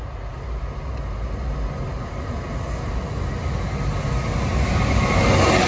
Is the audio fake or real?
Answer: real